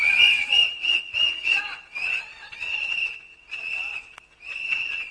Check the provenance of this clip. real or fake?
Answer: fake